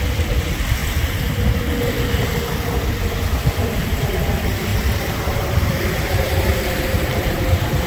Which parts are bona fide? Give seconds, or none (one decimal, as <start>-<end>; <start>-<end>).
0.0-4.7